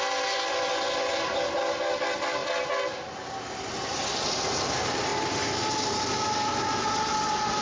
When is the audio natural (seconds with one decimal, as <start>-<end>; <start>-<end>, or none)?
0.0-7.6

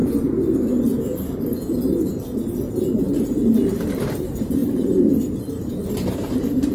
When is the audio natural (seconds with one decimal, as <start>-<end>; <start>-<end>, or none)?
0.0-2.7

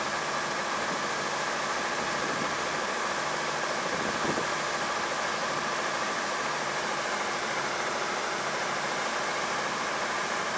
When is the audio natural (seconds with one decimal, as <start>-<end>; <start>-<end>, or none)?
0.0-5.4

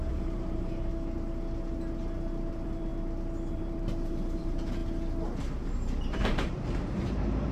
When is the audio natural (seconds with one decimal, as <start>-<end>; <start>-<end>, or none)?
0.9-2.5; 2.9-3.5; 4.8-5.4